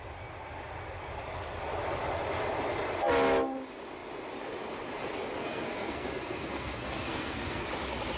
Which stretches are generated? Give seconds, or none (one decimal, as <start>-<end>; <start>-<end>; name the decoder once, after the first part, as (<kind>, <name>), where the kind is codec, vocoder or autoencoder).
5.4-7.6 (codec, SNAC)